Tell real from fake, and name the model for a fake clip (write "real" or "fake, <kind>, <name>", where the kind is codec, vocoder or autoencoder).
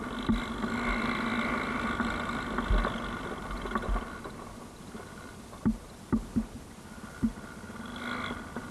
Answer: real